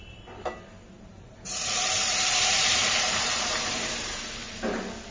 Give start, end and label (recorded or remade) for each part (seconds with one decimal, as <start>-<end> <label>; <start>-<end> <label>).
0.0-1.1 recorded; 1.1-4.2 remade; 4.2-5.1 recorded